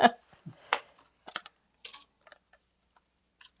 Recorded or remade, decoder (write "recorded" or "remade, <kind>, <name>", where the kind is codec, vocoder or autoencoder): recorded